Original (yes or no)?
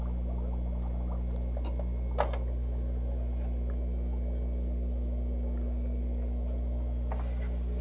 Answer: yes